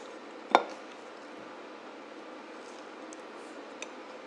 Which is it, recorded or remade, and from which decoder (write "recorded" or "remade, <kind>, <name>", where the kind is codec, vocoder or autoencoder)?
recorded